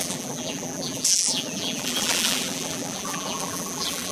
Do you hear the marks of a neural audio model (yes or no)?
yes